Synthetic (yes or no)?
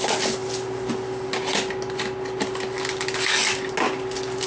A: no